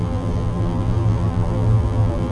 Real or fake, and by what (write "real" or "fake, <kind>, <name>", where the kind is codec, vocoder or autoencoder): fake, vocoder, BigVGAN v2